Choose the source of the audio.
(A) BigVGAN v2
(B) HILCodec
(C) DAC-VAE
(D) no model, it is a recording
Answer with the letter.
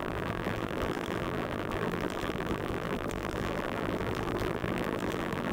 A